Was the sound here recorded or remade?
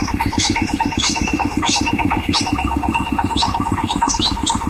remade